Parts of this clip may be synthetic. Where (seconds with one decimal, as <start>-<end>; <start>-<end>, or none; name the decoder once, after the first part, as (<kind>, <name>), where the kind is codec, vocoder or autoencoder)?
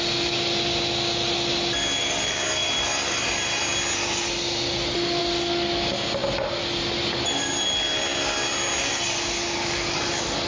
none